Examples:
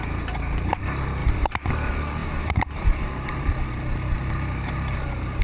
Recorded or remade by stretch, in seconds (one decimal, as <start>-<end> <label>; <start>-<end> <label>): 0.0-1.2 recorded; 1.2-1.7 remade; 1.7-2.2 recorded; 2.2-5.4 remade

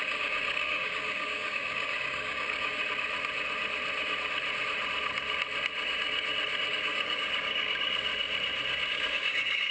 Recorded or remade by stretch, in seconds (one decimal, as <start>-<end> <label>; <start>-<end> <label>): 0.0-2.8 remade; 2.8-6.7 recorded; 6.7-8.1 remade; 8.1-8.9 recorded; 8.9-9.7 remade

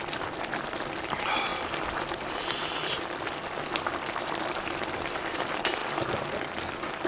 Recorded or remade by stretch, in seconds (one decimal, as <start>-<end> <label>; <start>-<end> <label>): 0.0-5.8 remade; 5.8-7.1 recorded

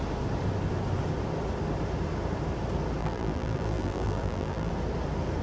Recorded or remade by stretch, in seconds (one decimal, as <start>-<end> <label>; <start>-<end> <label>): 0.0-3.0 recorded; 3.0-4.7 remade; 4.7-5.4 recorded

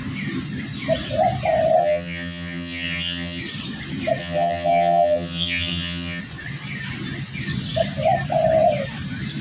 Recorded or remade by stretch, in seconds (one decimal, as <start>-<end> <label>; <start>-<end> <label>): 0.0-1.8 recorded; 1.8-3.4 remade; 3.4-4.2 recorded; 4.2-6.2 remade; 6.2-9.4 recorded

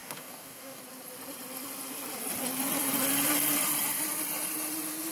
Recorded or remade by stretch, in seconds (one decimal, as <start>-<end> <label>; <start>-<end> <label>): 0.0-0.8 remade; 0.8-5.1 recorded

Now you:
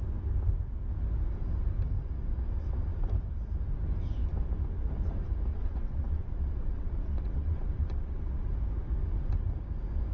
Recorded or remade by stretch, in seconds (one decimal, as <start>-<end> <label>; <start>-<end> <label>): 0.0-5.5 recorded; 5.5-8.5 remade; 8.5-10.1 recorded

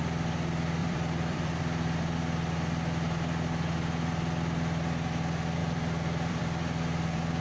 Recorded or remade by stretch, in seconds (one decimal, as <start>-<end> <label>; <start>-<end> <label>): 0.0-0.8 recorded; 0.8-1.6 remade; 1.6-5.6 recorded; 5.6-6.4 remade; 6.4-7.4 recorded